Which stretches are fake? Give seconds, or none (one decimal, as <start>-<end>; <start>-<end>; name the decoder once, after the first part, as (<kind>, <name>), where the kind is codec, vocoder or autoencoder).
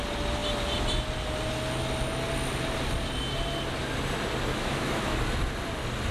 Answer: 4.5-5.2 (autoencoder, DAC-VAE)